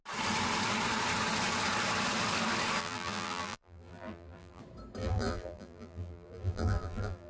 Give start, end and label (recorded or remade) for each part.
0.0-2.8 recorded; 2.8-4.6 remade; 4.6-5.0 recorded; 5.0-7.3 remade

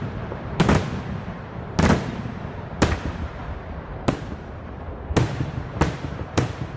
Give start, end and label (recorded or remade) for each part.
0.0-3.4 remade; 3.4-4.3 recorded; 4.3-6.8 remade

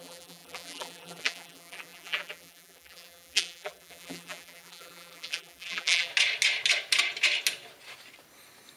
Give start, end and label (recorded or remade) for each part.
0.0-6.1 remade; 6.1-8.8 recorded

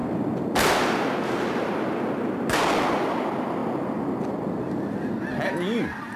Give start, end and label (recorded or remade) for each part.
0.0-6.2 recorded

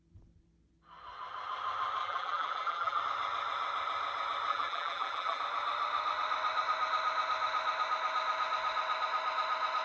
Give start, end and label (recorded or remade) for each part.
0.0-2.0 recorded; 2.0-3.0 remade; 3.0-4.5 recorded; 4.5-5.4 remade; 5.4-9.8 recorded

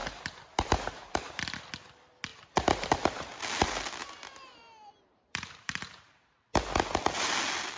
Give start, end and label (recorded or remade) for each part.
0.0-1.3 remade; 1.3-2.3 recorded; 2.3-3.4 remade; 3.4-4.0 recorded; 4.0-6.5 remade; 6.5-7.8 recorded

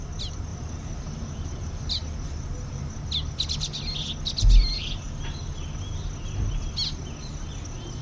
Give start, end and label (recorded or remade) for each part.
0.0-0.5 recorded; 0.5-3.0 remade; 3.0-8.0 recorded

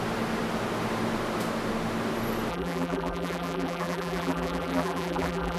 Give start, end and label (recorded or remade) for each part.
0.0-2.5 recorded; 2.5-5.6 remade